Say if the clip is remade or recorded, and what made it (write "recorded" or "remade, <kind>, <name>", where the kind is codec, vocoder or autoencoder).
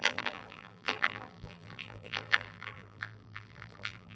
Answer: remade, vocoder, BigVGAN v2